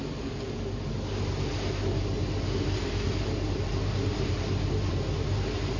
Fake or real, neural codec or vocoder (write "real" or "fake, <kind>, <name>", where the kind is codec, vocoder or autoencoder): real